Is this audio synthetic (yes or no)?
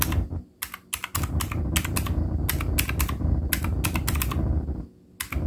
no